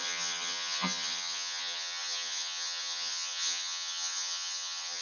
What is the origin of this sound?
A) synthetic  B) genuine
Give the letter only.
A